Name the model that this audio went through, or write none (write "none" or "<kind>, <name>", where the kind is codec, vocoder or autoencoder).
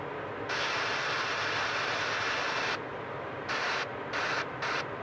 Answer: none